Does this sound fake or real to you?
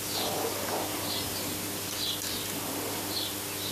real